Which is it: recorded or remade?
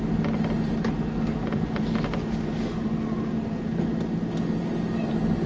recorded